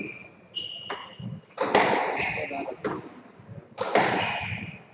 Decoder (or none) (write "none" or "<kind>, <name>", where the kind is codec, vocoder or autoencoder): none